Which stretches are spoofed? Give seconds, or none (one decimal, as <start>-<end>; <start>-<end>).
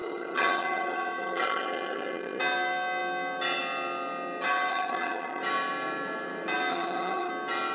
0.0-2.4; 4.7-5.4; 6.7-7.3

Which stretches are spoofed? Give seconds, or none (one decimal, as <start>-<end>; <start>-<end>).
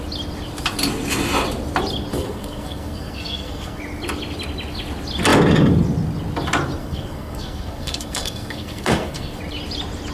2.1-3.8; 6.8-9.4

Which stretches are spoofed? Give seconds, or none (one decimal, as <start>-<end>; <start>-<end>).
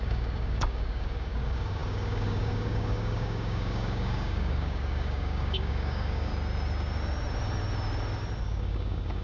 0.0-6.3; 8.4-9.2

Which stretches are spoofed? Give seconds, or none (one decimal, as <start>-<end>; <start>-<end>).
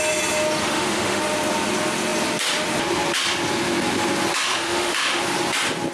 0.6-1.2; 4.5-5.2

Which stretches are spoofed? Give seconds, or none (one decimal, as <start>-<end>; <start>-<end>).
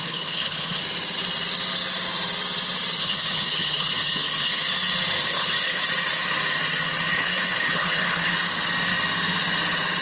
0.0-0.8; 3.0-4.6; 5.2-5.8; 7.1-8.3